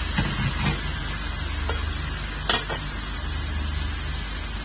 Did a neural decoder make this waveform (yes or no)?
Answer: no